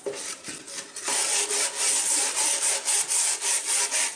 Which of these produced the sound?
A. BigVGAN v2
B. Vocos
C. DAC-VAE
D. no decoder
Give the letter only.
D